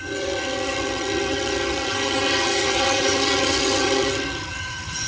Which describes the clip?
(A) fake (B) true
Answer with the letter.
A